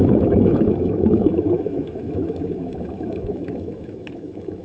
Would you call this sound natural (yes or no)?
no